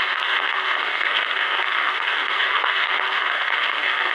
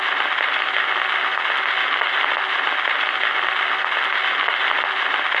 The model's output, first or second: first